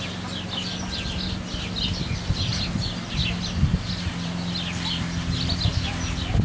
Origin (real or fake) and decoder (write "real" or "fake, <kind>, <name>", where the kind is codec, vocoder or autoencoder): real